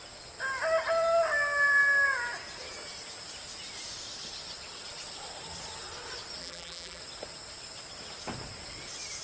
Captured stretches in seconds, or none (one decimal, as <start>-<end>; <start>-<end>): 0.0-6.4; 7.0-9.2